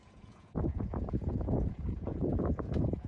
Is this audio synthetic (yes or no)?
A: yes